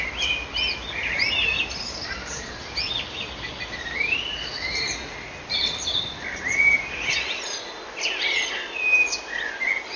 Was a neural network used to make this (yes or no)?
no